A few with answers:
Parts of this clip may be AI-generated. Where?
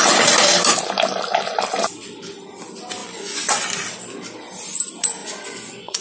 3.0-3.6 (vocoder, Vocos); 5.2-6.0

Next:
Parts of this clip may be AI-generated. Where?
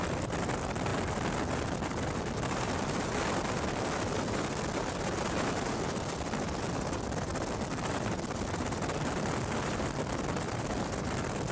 0.0-0.9 (vocoder, BigVGAN v2); 1.7-7.3; 7.9-11.5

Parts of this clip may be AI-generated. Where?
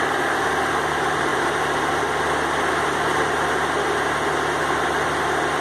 none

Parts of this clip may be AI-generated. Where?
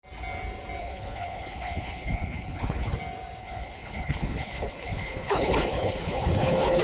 0.8-2.9 (codec, HILCodec); 3.4-6.8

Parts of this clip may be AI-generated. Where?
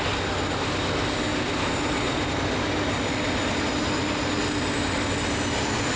none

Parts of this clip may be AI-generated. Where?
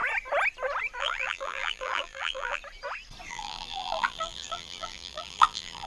1.0-2.6 (vocoder, BigVGAN v2); 3.3-5.9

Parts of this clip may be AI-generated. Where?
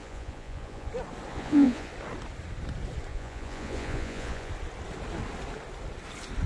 0.0-0.9 (vocoder, Vocos); 1.3-1.9; 3.1-4.5